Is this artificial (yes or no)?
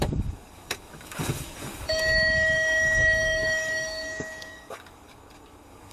yes